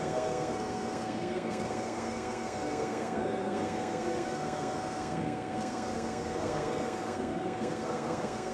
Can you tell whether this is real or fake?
fake